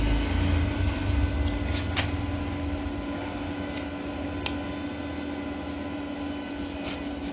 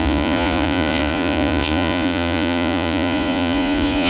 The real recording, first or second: first